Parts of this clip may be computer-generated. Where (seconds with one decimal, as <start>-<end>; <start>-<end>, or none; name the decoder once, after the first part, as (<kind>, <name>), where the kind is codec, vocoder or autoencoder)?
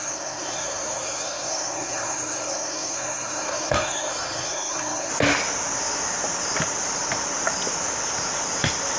0.0-5.1 (codec, SNAC)